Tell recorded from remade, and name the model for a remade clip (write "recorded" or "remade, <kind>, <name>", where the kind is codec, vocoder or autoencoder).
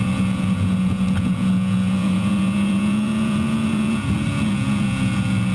remade, vocoder, Vocos